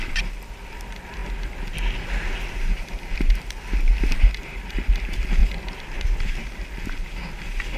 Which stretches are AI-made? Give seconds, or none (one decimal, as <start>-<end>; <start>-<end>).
5.4-6.3